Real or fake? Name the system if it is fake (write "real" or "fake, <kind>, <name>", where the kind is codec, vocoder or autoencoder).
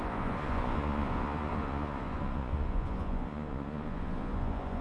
fake, vocoder, Vocos